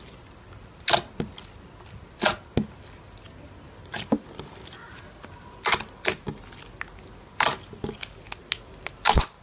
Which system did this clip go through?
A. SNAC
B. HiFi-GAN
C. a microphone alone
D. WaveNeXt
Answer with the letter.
C